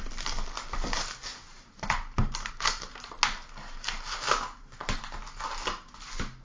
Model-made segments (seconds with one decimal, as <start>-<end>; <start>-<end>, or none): 1.3-2.5